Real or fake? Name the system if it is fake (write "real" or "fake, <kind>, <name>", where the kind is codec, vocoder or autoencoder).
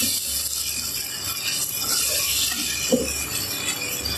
real